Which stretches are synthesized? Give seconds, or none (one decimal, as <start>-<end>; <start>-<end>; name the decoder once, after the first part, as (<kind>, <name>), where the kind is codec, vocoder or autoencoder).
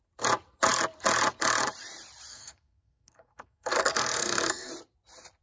2.3-4.7 (codec, SNAC)